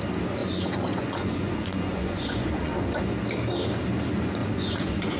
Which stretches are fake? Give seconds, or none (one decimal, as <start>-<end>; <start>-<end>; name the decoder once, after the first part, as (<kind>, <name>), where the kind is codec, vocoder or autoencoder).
0.4-3.0 (vocoder, Vocos); 4.4-5.2